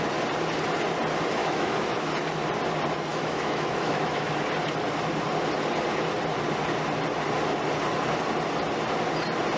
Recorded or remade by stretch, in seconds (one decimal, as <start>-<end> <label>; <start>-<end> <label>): 0.0-1.4 recorded; 1.4-2.1 remade; 2.1-3.1 recorded; 3.1-4.3 remade; 4.3-9.6 recorded